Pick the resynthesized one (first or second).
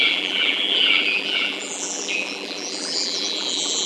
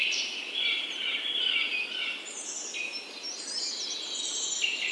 first